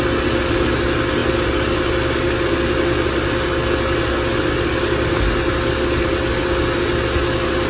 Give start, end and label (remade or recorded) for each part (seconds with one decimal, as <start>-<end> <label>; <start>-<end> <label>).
0.0-7.7 recorded